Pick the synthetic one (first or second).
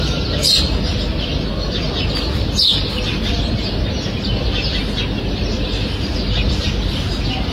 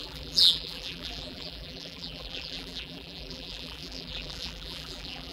second